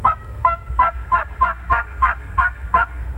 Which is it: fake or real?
fake